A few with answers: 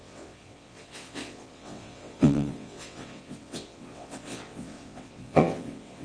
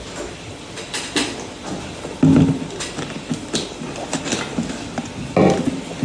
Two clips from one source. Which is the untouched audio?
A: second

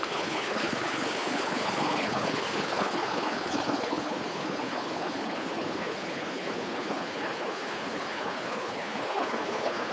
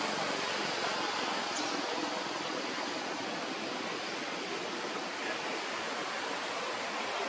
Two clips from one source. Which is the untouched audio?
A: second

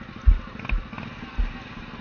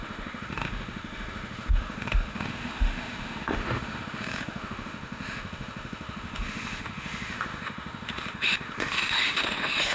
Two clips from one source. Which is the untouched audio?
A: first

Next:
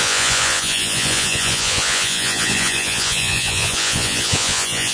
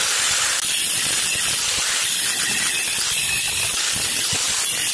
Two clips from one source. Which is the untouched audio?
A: second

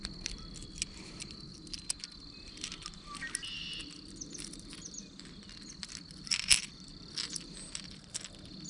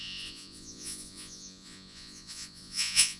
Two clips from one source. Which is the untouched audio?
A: first